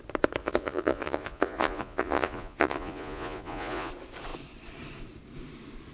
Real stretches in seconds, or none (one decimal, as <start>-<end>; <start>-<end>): 0.0-0.4; 3.9-5.9